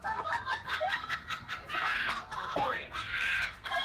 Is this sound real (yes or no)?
no